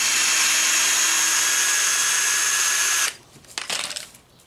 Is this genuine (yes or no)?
yes